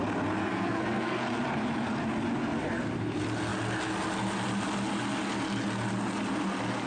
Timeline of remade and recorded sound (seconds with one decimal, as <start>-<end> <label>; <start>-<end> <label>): 0.0-0.4 recorded; 0.4-1.2 remade; 1.2-6.9 recorded